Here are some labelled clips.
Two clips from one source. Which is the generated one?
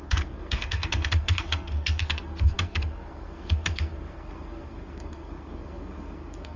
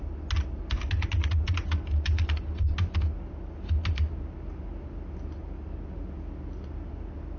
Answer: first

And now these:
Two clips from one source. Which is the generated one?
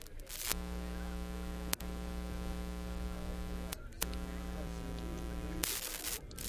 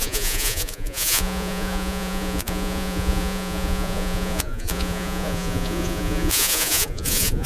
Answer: second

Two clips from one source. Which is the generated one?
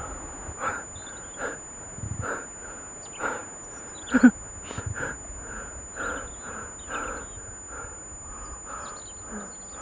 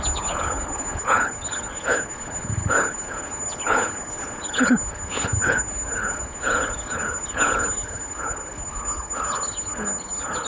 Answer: second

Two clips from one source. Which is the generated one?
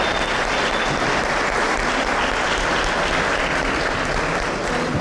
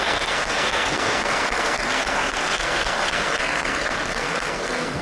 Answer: second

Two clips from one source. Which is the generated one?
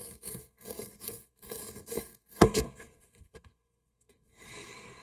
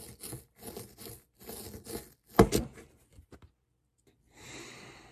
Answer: first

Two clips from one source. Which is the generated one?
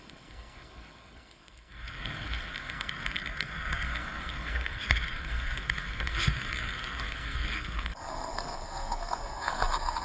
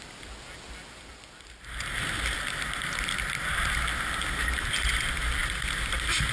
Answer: first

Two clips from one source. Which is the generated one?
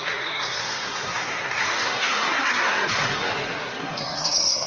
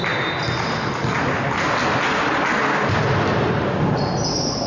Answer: first